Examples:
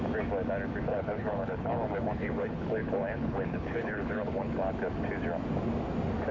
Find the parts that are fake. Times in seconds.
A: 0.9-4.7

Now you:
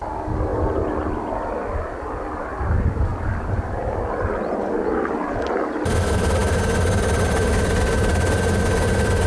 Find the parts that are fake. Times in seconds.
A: none

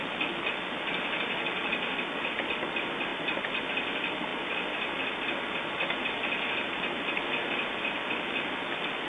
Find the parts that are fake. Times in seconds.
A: none

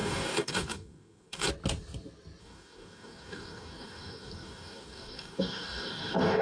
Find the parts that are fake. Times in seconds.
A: 0.0-1.5; 2.4-6.4

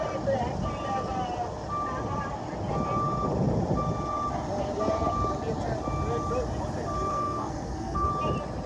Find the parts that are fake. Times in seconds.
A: 7.1-8.1